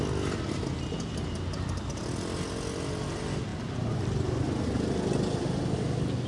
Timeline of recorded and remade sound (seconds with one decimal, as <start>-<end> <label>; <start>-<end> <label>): 0.0-6.3 recorded